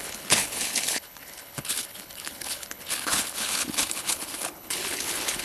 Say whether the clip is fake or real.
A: fake